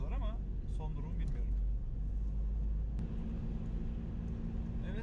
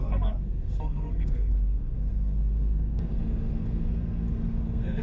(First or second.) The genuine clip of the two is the first